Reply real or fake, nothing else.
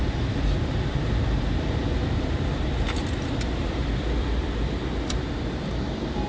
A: fake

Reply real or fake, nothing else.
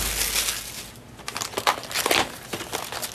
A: real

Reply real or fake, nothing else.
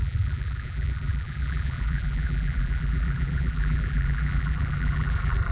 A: fake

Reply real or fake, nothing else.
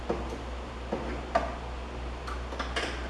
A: real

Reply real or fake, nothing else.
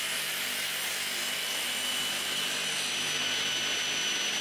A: real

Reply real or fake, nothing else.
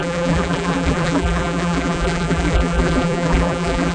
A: fake